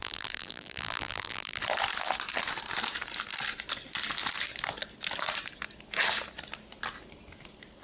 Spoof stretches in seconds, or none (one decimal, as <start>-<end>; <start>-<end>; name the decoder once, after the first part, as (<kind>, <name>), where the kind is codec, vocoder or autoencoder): 0.0-1.6 (vocoder, BigVGAN v2)